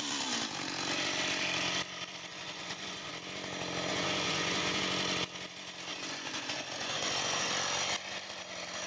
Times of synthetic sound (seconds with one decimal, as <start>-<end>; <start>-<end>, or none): 2.3-3.1; 3.9-4.8; 5.9-7.5